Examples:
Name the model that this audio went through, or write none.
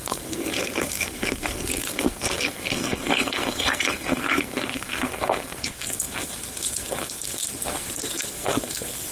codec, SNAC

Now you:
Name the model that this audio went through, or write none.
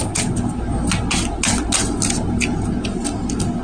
none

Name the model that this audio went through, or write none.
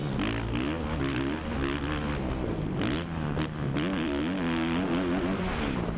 none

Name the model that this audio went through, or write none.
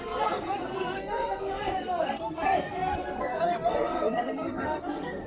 codec, SNAC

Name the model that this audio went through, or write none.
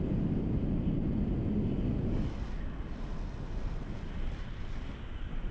none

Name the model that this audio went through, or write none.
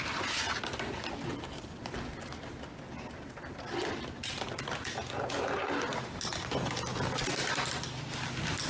none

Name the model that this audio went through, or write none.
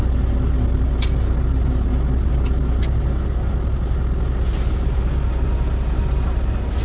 none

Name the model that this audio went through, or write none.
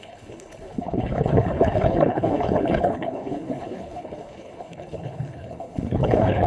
codec, HILCodec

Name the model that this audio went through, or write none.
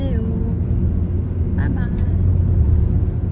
none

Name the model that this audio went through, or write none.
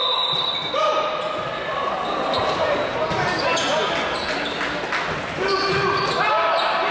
none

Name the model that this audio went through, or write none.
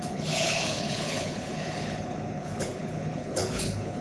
codec, HILCodec